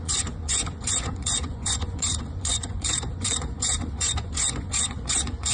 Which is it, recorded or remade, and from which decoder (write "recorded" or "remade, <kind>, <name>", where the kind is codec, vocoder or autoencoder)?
remade, vocoder, Vocos